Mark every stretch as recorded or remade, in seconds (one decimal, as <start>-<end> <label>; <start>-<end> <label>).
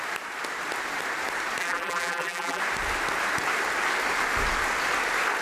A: 0.0-1.6 recorded; 1.6-2.6 remade; 2.6-5.4 recorded